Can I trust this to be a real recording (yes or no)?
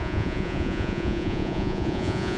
no